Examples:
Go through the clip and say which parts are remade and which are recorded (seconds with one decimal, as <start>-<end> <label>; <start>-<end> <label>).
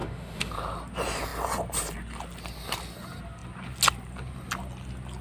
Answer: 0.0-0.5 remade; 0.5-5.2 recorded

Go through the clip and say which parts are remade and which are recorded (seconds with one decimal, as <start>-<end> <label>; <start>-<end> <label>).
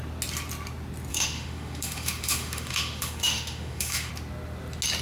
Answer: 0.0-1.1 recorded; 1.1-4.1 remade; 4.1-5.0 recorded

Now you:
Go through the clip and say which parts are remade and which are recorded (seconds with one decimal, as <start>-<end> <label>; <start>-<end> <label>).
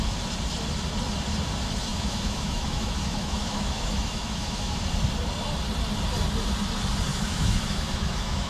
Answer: 0.0-1.9 recorded; 1.9-4.8 remade; 4.8-7.1 recorded; 7.1-8.5 remade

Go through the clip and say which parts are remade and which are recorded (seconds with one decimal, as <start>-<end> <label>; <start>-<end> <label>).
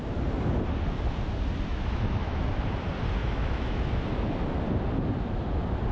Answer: 0.0-1.7 recorded; 1.7-2.5 remade; 2.5-3.2 recorded; 3.2-3.9 remade; 3.9-5.9 recorded